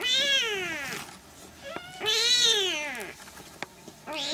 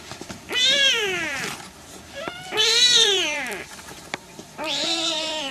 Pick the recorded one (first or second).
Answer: first